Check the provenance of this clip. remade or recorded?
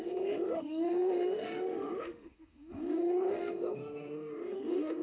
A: remade